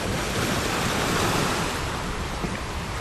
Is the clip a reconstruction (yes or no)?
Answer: yes